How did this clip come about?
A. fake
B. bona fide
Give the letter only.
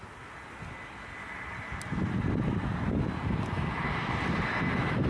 B